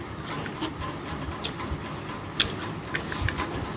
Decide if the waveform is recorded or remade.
recorded